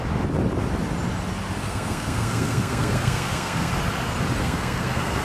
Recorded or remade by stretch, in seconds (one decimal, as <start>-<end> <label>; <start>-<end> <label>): 0.0-1.6 recorded; 1.6-3.7 remade; 3.7-4.4 recorded; 4.4-5.2 remade